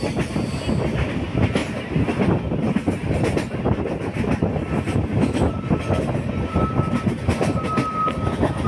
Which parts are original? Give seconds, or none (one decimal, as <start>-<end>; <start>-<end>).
0.0-8.7